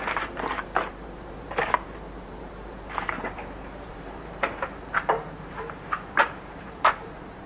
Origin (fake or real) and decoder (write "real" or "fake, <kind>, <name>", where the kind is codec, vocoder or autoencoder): fake, vocoder, BigVGAN v2